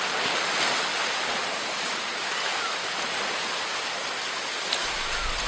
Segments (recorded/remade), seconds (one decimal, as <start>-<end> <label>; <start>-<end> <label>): 0.0-5.5 recorded